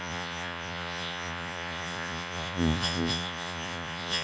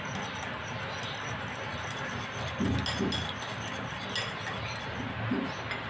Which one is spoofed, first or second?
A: first